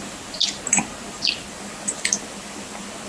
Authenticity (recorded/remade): recorded